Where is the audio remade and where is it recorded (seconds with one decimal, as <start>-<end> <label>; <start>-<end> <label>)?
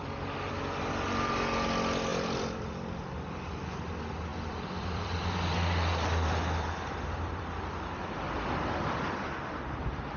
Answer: 0.0-2.1 recorded; 2.1-3.0 remade; 3.0-4.3 recorded; 4.3-9.3 remade; 9.3-10.2 recorded